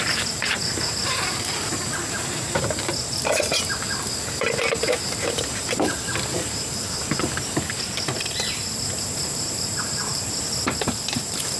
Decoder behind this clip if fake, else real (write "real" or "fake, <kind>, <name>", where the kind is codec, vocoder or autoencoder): fake, vocoder, BigVGAN v2